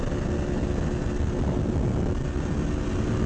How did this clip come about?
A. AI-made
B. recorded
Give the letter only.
B